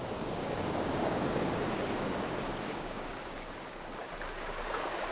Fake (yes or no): yes